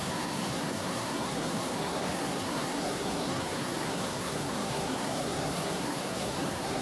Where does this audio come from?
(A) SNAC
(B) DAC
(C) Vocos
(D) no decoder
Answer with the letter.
A